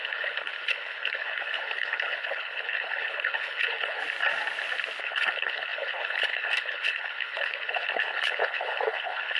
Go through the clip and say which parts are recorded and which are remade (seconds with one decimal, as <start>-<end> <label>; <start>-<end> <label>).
0.0-4.0 remade; 4.0-5.0 recorded; 5.0-9.4 remade